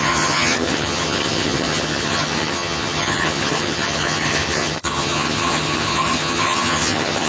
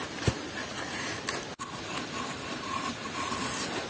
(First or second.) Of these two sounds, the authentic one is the second